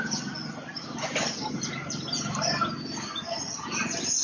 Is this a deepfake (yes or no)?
no